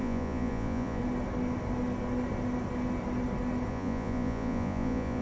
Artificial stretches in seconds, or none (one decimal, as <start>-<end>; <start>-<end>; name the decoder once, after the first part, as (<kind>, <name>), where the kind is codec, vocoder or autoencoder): 0.0-1.0 (vocoder, Vocos); 3.7-5.2